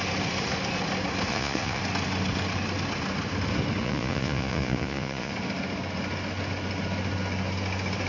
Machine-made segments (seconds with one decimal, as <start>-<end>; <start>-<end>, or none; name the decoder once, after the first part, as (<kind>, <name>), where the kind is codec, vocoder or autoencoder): 1.3-1.8 (vocoder, Vocos); 3.8-5.3